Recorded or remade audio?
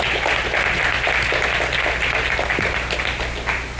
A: recorded